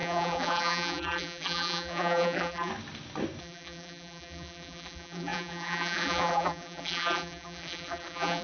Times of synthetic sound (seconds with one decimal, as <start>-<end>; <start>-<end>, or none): 0.0-2.7; 3.4-8.4